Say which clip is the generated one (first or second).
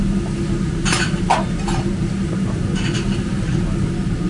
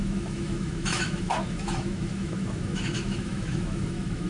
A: second